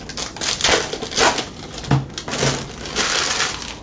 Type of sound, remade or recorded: recorded